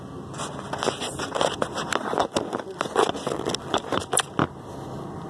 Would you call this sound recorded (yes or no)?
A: yes